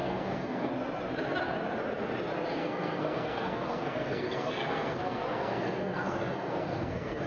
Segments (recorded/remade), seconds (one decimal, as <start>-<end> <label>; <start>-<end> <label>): 0.0-0.7 remade; 0.7-2.6 recorded; 2.6-7.3 remade

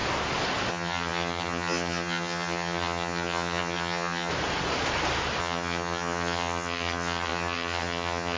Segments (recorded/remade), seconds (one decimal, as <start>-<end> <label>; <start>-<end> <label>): 0.0-0.7 recorded; 0.7-4.3 remade; 4.3-5.4 recorded; 5.4-8.4 remade

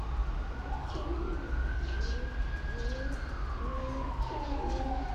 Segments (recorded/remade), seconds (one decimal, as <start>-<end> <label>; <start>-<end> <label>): 0.0-0.8 recorded; 0.8-2.0 remade; 2.0-3.7 recorded; 3.7-5.1 remade

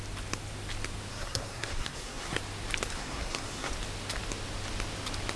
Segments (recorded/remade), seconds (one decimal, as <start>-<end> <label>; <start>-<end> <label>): 0.0-1.1 recorded; 1.1-2.4 remade; 2.4-2.9 recorded; 2.9-3.7 remade; 3.7-5.4 recorded

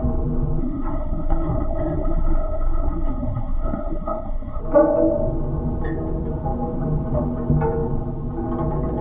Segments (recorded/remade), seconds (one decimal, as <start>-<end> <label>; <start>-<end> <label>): 0.0-0.6 recorded; 0.6-4.6 remade; 4.6-9.0 recorded